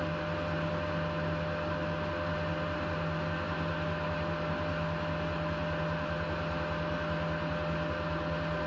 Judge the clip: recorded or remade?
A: recorded